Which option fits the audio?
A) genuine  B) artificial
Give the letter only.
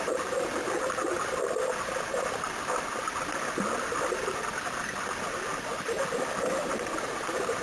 A